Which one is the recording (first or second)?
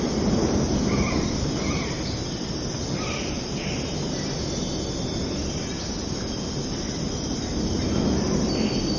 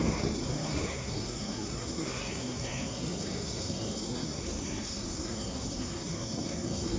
first